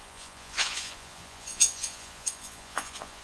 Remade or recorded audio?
remade